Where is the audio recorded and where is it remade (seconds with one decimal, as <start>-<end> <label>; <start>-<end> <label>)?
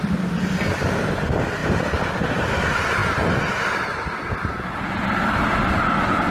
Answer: 0.0-6.3 recorded